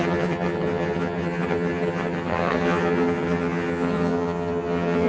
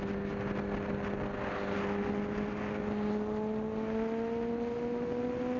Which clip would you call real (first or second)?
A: second